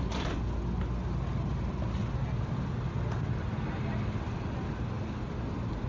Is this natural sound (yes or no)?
yes